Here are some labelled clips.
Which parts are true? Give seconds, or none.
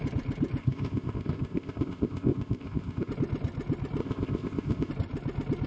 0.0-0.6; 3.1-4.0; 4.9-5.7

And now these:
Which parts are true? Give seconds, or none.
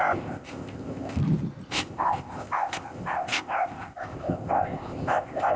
1.2-1.7